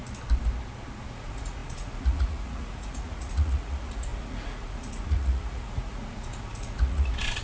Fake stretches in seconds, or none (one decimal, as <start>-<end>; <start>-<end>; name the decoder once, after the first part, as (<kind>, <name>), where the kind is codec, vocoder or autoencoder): 1.1-7.4 (vocoder, Vocos)